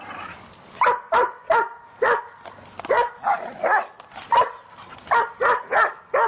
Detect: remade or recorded recorded